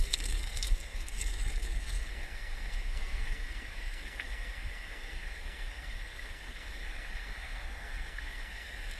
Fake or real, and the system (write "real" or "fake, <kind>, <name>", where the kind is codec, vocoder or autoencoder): fake, codec, SNAC